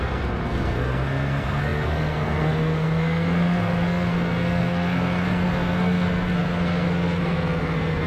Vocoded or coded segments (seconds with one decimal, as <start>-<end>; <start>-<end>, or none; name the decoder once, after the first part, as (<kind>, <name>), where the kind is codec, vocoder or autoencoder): 0.0-8.1 (codec, SNAC)